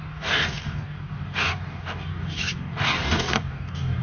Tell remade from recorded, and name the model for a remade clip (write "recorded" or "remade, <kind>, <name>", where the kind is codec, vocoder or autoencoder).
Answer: remade, codec, DAC